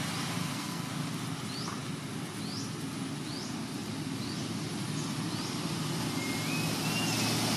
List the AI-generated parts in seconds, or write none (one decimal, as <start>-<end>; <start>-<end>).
0.4-0.9